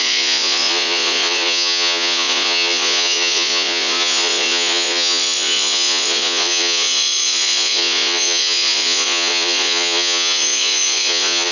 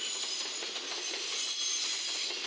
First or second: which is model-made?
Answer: first